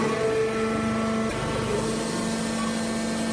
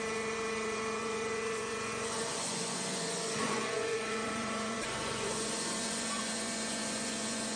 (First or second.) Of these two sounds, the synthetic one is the second